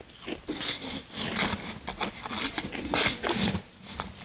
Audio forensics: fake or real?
real